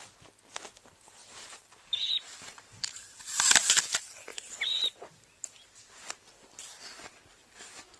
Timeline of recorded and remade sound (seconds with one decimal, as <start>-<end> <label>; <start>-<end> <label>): 0.0-1.2 recorded; 1.2-3.8 remade; 3.8-4.3 recorded; 4.3-5.9 remade; 5.9-8.0 recorded